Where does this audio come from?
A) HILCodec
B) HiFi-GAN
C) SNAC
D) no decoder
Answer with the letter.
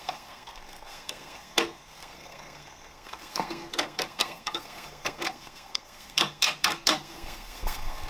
C